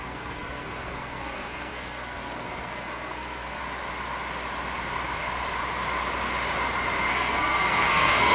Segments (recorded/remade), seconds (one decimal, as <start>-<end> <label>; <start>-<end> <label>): 0.0-3.6 remade; 3.6-7.1 recorded; 7.1-8.3 remade